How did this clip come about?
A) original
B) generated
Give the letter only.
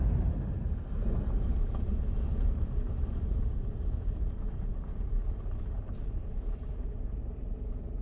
B